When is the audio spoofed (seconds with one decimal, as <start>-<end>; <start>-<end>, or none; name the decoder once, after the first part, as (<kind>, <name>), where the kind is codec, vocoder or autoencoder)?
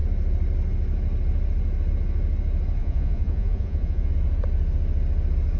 2.8-4.1 (vocoder, Vocos)